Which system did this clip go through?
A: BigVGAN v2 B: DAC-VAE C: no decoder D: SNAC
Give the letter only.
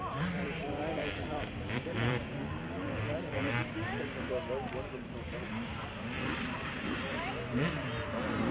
A